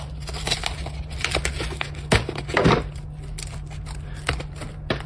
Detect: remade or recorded recorded